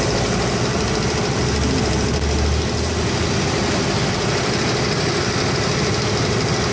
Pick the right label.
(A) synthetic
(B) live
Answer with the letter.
B